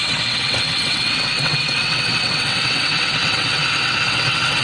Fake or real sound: fake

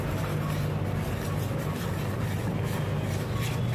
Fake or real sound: real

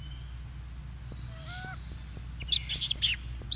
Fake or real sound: real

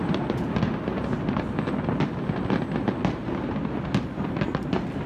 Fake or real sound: real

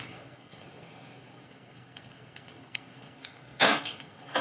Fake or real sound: fake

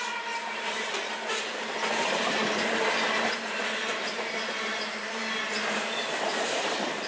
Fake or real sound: real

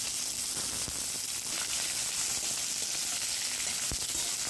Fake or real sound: real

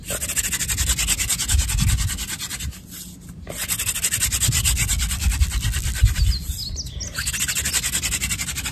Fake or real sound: real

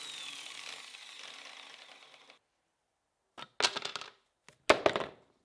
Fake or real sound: real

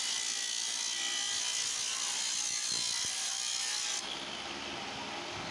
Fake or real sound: real